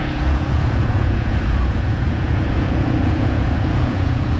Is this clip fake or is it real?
fake